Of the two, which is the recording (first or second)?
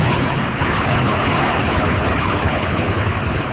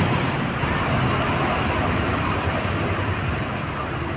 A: second